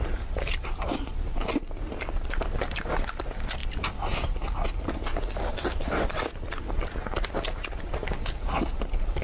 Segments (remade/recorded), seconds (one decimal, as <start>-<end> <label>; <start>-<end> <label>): 0.0-9.2 recorded